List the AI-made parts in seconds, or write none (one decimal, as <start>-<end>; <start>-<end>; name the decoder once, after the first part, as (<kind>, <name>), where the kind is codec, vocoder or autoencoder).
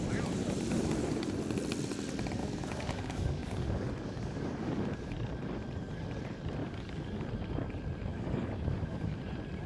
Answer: 2.4-5.1 (codec, DAC); 6.6-7.2; 8.1-9.2